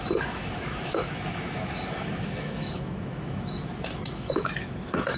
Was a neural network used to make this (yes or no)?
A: yes